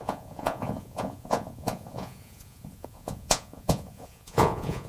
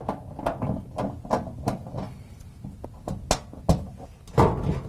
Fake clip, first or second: first